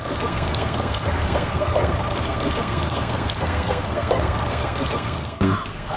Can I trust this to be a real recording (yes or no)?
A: no